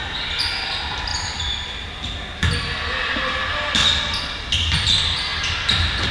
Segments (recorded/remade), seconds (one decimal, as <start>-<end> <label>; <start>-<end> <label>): 0.0-6.1 recorded